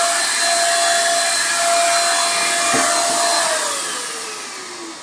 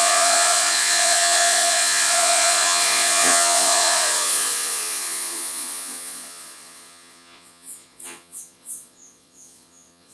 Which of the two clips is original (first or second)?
first